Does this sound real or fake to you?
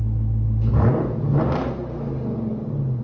real